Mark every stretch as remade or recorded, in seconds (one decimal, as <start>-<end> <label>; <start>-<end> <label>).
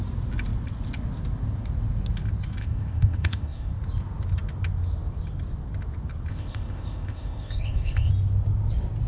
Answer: 0.0-2.6 recorded; 2.6-3.7 remade; 3.7-6.3 recorded; 6.3-8.1 remade; 8.1-9.1 recorded